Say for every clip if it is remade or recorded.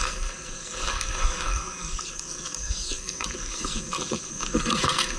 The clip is remade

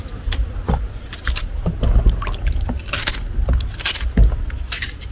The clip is recorded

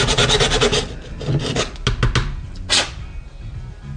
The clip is recorded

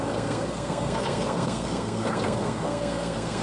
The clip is remade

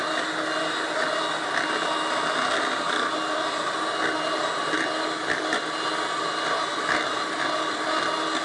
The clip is recorded